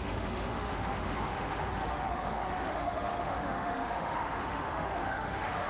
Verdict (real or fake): fake